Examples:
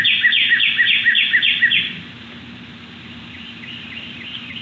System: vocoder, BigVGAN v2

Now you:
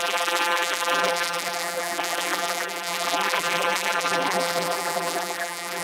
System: vocoder, BigVGAN v2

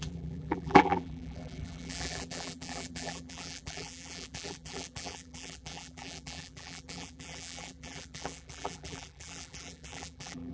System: vocoder, BigVGAN v2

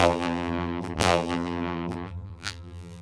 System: vocoder, BigVGAN v2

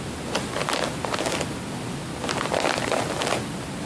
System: none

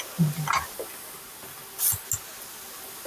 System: none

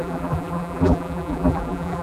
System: vocoder, BigVGAN v2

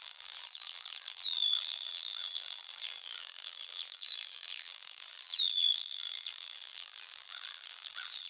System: vocoder, BigVGAN v2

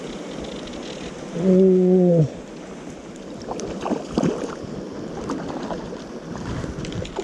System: none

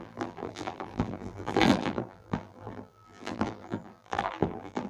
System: vocoder, BigVGAN v2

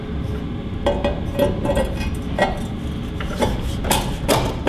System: none